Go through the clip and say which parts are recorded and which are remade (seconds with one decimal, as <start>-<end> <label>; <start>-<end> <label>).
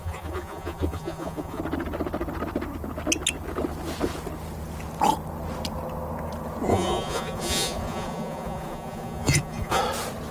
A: 0.0-1.6 remade; 1.6-6.7 recorded; 6.7-9.8 remade; 9.8-10.3 recorded